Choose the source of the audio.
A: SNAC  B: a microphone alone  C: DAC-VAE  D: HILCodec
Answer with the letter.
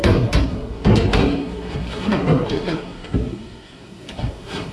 A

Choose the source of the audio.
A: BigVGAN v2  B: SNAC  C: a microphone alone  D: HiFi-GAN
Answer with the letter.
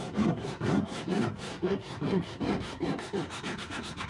B